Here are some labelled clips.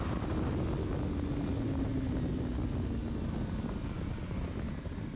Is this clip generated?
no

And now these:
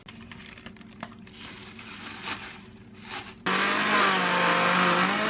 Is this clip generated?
no